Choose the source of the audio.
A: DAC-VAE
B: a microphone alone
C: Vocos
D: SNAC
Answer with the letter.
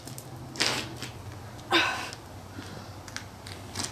B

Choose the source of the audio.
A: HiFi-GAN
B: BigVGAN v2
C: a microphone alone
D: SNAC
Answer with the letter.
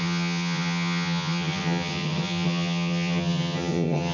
A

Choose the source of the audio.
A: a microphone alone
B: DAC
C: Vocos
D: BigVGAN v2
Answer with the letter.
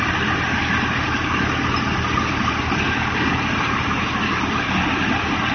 A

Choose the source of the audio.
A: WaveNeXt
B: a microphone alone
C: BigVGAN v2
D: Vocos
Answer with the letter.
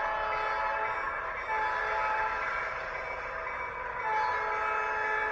B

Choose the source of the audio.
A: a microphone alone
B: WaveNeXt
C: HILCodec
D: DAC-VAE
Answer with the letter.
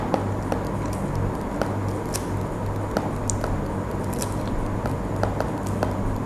A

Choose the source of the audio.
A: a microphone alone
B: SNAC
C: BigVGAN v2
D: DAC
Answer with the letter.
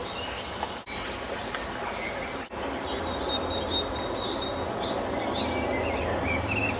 A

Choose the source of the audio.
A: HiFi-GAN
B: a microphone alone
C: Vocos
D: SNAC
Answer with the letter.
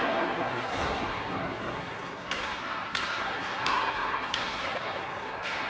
D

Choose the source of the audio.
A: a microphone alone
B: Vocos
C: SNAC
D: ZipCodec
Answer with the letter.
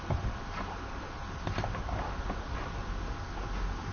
A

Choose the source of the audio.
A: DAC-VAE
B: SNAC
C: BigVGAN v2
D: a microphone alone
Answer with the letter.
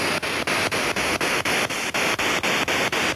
D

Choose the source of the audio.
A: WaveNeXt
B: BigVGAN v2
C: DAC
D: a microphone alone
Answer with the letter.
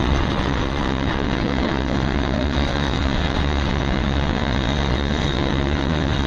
A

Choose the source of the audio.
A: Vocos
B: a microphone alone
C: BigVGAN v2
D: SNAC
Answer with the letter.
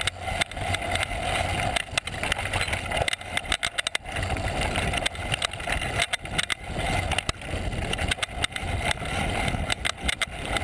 B